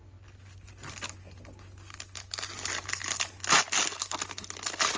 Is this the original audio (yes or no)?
yes